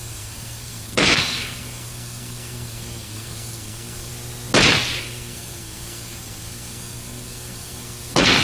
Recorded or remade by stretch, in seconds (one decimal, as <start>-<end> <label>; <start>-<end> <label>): 0.0-4.1 remade; 4.1-5.0 recorded; 5.0-8.4 remade